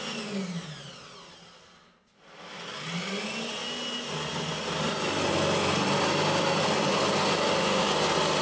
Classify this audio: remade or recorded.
recorded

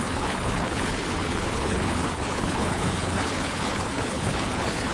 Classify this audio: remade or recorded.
remade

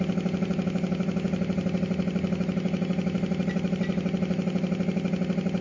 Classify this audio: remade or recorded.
recorded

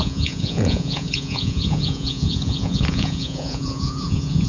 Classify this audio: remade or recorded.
remade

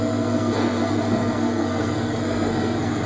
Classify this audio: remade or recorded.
remade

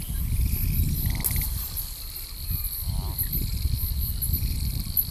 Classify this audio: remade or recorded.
recorded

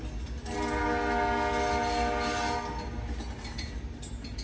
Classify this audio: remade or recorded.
recorded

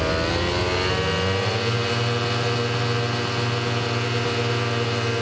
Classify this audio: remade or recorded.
recorded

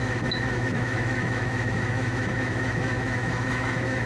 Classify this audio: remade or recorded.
remade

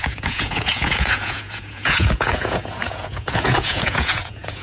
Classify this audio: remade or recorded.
remade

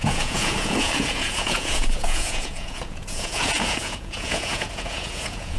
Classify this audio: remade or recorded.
remade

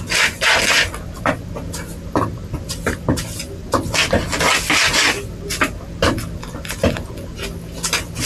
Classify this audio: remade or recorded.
recorded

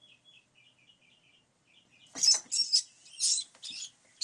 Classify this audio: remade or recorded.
recorded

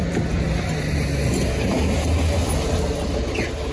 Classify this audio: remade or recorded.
recorded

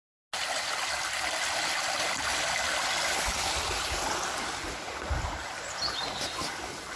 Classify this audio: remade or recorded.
recorded